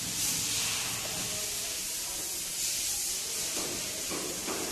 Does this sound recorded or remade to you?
recorded